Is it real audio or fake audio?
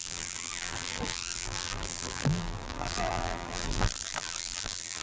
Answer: fake